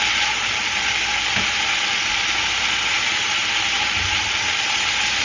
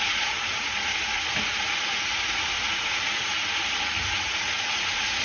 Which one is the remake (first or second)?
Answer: second